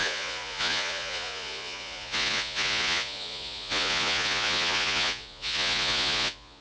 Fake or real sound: fake